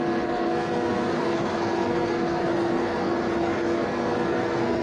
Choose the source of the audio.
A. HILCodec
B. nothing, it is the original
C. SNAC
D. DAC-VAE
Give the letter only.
C